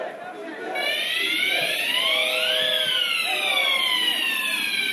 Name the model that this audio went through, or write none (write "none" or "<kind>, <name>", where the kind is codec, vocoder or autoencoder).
none